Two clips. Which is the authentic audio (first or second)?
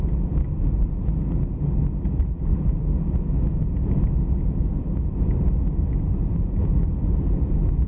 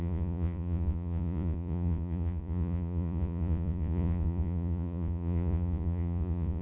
first